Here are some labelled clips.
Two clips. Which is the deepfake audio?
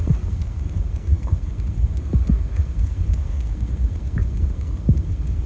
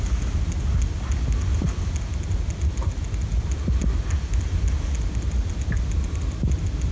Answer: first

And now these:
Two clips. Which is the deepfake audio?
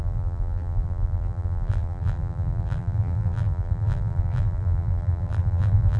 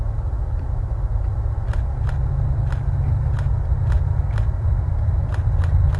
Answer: first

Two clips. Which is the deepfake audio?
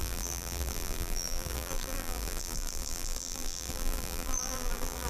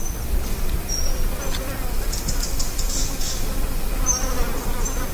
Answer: first